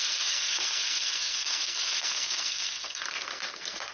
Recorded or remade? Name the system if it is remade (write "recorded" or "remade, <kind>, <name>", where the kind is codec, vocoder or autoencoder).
remade, codec, SNAC